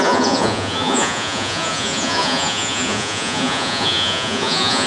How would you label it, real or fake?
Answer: fake